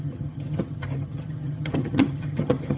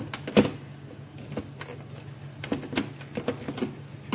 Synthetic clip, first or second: first